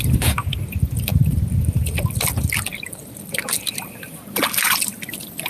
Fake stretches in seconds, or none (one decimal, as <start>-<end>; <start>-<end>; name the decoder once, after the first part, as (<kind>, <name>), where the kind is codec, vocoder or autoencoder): none